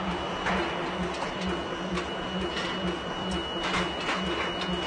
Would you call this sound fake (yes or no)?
no